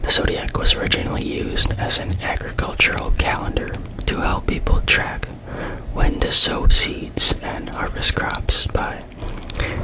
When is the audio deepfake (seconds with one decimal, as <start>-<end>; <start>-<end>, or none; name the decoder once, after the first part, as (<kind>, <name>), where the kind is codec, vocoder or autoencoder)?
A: 1.0-3.5 (vocoder, WaveNeXt); 5.9-9.0